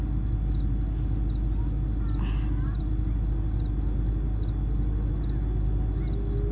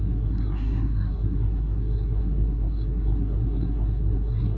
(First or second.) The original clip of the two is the first